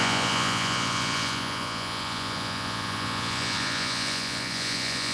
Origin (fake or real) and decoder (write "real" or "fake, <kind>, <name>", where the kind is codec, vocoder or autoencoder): fake, vocoder, Vocos